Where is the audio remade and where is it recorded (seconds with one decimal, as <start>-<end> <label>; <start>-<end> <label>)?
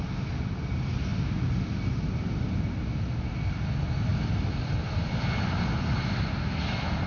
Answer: 0.0-7.1 recorded